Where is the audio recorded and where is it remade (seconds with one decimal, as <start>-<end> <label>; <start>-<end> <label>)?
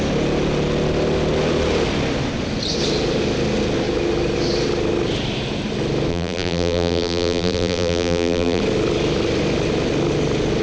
0.0-6.1 recorded; 6.1-8.6 remade; 8.6-10.6 recorded